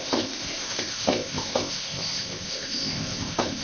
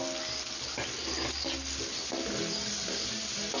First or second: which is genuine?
second